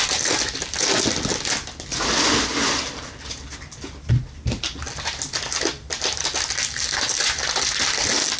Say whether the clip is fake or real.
real